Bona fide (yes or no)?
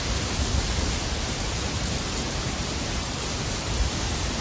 no